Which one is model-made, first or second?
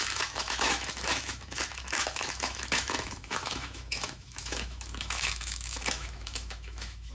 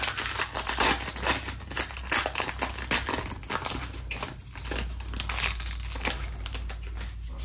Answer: first